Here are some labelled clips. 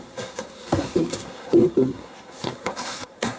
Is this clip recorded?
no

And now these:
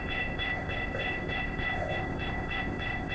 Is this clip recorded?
no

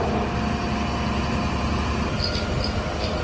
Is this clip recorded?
yes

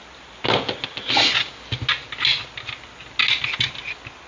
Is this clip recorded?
yes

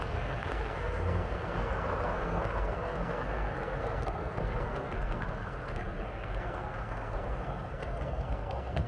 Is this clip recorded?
no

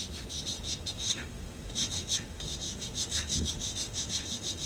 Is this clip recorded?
no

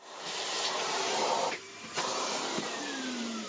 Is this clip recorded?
no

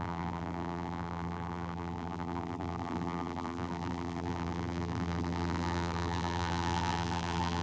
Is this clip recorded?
no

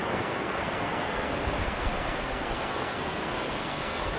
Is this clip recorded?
no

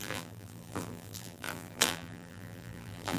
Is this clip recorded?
no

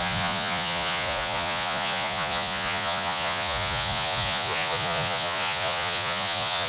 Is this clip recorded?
no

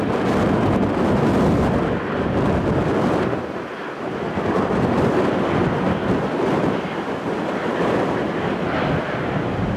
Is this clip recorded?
yes